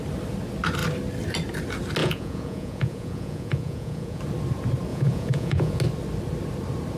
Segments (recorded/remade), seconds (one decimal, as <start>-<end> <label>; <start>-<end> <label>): 0.0-2.0 recorded; 2.0-4.2 remade; 4.2-4.9 recorded; 4.9-5.8 remade; 5.8-7.0 recorded